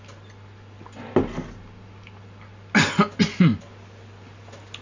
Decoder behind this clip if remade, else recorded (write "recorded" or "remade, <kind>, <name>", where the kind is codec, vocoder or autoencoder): recorded